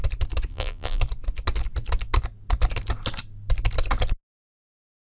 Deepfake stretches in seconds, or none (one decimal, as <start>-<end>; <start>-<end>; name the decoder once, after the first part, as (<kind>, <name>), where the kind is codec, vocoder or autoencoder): 0.5-1.0 (vocoder, BigVGAN v2)